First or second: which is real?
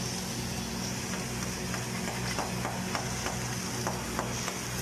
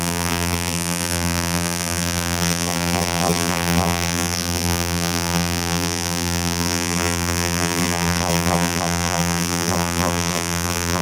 first